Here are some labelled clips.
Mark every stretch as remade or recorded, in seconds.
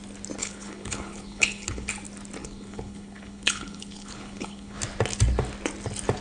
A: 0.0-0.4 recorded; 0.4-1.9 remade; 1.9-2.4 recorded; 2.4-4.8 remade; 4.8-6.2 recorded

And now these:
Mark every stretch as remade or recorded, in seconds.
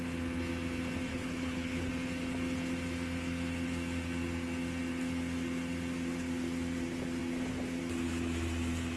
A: 0.0-1.1 recorded; 1.1-1.9 remade; 1.9-9.0 recorded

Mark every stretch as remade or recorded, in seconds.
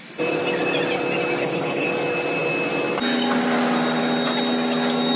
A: 0.0-1.4 recorded; 1.4-1.9 remade; 1.9-5.2 recorded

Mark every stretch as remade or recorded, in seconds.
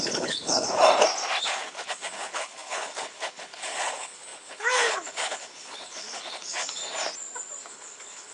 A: 0.0-0.8 remade; 0.8-1.4 recorded; 1.4-6.8 remade; 6.8-7.7 recorded; 7.7-8.3 remade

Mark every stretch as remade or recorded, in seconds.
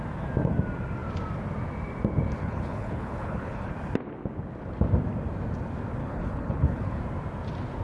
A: 0.0-2.4 recorded; 2.4-3.7 remade; 3.7-6.0 recorded; 6.0-7.0 remade; 7.0-7.8 recorded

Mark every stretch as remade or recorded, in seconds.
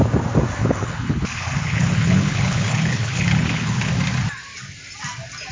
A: 0.0-0.6 recorded; 0.6-3.9 remade; 3.9-5.5 recorded